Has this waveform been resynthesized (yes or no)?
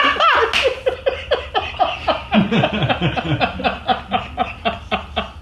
no